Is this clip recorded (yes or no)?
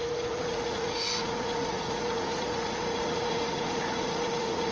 no